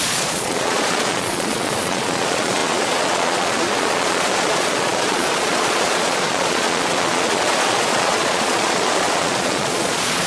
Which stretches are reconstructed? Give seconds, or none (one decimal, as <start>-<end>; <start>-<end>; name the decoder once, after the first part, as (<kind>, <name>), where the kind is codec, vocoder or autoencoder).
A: 0.0-10.3 (vocoder, Vocos)